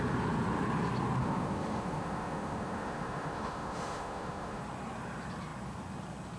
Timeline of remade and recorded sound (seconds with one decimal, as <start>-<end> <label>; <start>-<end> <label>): 0.0-1.2 recorded; 1.2-4.6 remade; 4.6-6.4 recorded